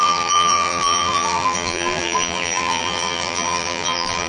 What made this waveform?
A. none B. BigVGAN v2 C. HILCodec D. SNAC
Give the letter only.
B